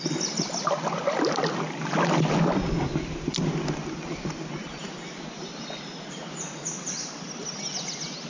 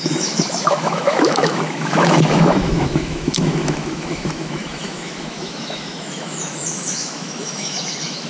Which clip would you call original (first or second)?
first